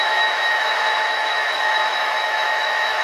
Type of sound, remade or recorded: remade